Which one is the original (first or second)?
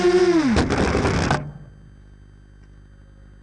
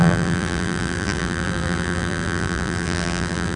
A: first